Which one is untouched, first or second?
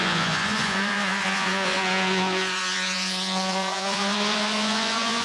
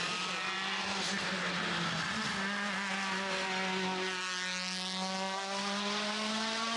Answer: second